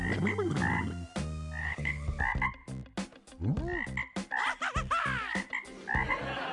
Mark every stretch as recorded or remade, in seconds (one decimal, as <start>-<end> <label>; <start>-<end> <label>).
0.0-1.6 recorded; 1.6-2.2 remade; 2.2-6.5 recorded